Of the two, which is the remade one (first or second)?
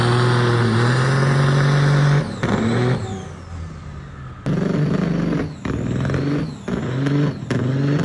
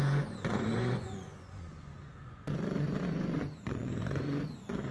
second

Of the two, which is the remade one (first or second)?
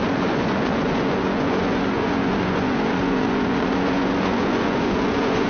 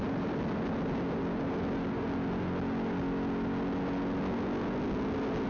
first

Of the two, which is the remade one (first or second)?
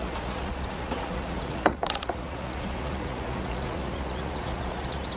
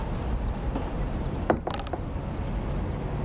first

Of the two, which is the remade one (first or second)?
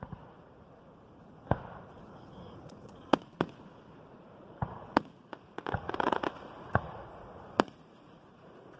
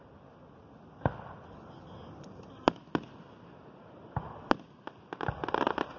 first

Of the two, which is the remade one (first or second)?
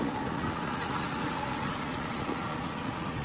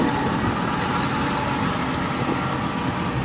first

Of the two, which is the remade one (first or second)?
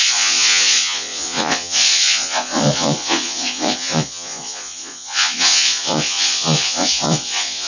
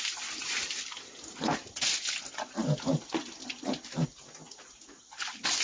first